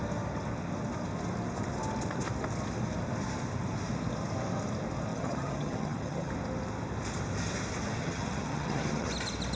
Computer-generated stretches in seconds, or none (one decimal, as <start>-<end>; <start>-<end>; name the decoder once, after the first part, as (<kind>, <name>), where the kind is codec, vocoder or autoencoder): 5.1-6.3 (vocoder, HiFi-GAN); 8.0-9.1